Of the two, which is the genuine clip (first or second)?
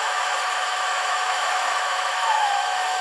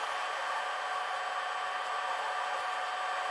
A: second